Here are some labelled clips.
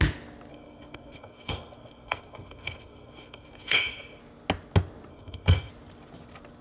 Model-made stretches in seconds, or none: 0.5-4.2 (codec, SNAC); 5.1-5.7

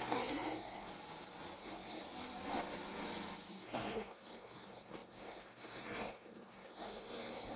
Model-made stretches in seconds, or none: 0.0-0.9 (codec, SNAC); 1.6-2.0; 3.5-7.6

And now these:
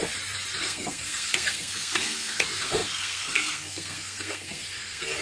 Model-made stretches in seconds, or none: 0.6-5.2 (codec, SNAC)

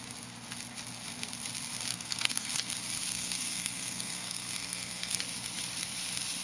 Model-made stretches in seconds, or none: 1.9-2.5 (codec, SNAC); 3.1-5.2

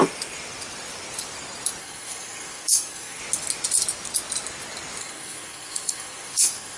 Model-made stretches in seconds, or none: 1.8-3.2 (codec, SNAC); 5.0-6.8